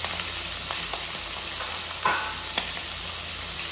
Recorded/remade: recorded